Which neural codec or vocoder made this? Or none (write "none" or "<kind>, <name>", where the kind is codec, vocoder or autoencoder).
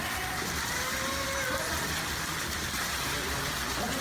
none